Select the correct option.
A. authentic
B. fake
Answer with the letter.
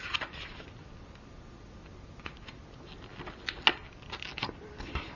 A